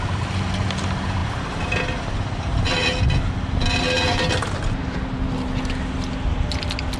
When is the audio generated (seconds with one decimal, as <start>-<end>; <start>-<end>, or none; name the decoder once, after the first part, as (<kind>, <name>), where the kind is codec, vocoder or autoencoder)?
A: none